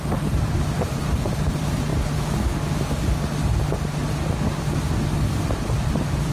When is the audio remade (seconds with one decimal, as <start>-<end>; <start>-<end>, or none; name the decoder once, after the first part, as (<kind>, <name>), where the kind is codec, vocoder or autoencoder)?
0.0-1.9 (vocoder, BigVGAN v2); 5.3-6.3